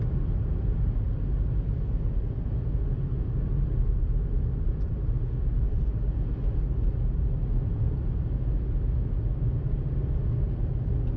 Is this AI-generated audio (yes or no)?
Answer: no